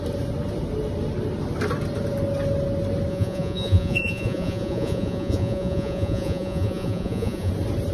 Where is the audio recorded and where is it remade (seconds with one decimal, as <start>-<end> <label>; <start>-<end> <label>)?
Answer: 0.0-3.1 recorded; 3.1-7.5 remade; 7.5-7.9 recorded